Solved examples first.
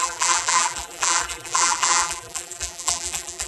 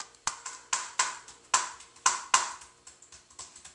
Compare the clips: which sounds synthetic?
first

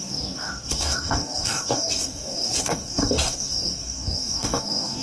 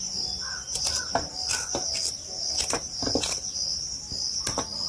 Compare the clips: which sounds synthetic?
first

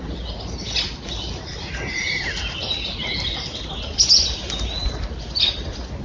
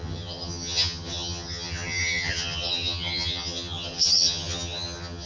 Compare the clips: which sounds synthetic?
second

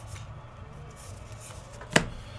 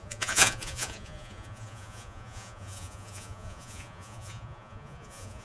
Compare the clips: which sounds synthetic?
second